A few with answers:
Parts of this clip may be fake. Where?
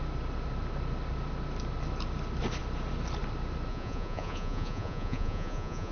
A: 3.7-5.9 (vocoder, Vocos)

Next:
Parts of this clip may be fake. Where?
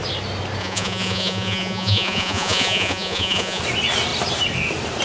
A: 0.6-3.6 (vocoder, Vocos)